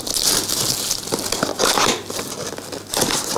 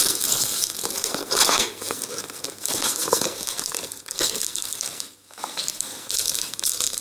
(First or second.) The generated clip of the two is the second